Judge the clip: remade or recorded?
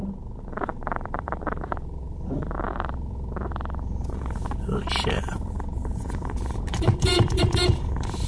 remade